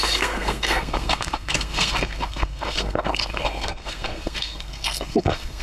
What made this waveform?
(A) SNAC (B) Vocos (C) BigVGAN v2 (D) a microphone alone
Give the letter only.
A